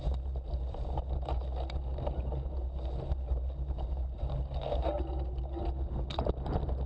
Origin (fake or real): real